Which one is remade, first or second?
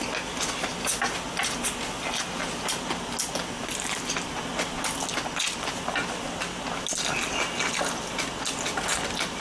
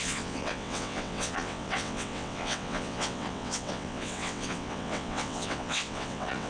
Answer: second